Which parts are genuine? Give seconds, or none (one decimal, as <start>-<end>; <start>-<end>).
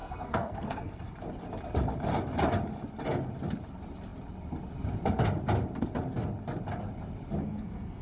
1.0-7.4